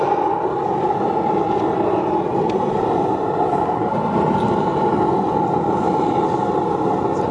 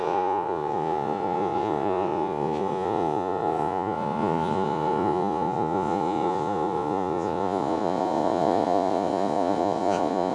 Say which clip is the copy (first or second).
second